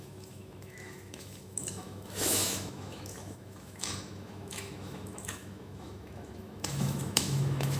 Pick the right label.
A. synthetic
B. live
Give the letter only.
A